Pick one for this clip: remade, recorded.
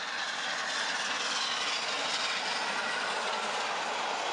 recorded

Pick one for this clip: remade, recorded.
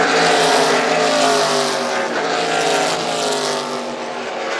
recorded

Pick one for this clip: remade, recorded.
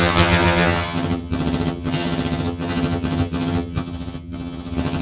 remade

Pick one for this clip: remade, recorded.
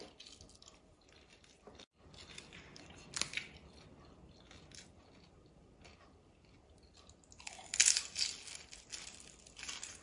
recorded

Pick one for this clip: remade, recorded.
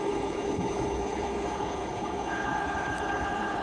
remade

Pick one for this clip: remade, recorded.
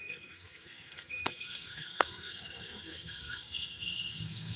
remade